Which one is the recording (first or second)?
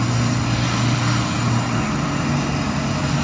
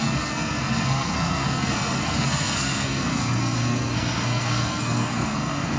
first